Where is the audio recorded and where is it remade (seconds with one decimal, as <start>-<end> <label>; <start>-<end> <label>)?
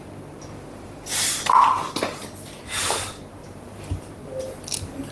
0.0-3.4 recorded; 3.4-4.4 remade; 4.4-5.1 recorded